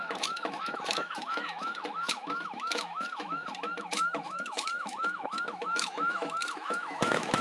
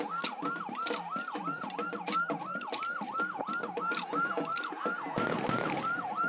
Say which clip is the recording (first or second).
second